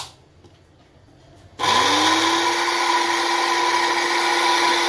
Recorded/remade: recorded